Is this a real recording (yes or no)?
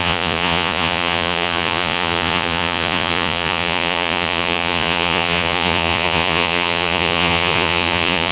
no